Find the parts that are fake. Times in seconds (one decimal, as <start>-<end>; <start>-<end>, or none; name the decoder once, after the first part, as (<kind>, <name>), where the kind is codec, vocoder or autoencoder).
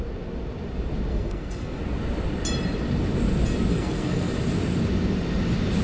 1.1-1.8 (codec, SNAC); 3.7-4.3